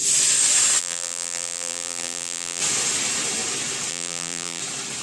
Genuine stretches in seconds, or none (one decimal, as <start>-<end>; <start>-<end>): 0.0-0.8; 2.6-3.9; 4.6-5.0